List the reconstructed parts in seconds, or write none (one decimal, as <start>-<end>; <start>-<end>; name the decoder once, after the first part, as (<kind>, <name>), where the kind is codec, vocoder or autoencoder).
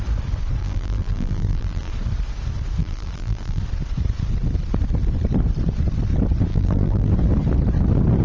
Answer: 0.6-1.9 (vocoder, BigVGAN v2); 2.8-3.6; 6.5-7.1